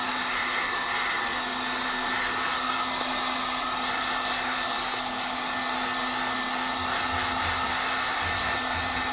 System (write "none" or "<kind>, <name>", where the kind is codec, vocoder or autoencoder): none